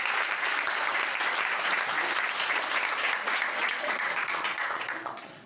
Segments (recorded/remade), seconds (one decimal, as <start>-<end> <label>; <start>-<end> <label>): 0.0-3.6 recorded; 3.6-5.5 remade